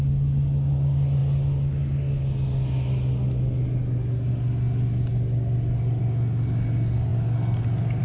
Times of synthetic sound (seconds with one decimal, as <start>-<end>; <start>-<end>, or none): none